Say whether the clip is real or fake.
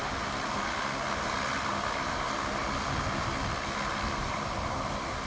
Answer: real